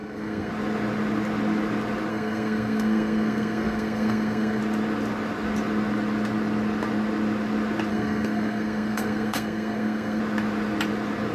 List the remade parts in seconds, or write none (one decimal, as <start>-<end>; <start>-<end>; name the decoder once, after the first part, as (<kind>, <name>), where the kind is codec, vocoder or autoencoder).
0.0-0.5 (codec, SNAC); 2.1-4.6; 7.9-10.2